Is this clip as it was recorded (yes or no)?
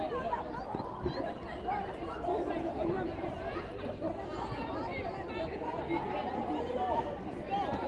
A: yes